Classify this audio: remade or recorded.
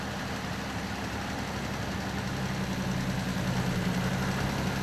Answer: recorded